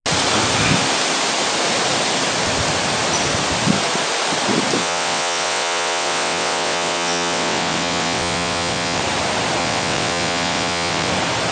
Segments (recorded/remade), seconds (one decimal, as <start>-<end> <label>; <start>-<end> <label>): 0.0-4.8 recorded; 4.8-9.0 remade; 9.0-9.6 recorded; 9.6-11.1 remade; 11.1-11.5 recorded